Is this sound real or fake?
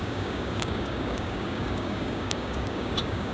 fake